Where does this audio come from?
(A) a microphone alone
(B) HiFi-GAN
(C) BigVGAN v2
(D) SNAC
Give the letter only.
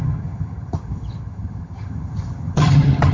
B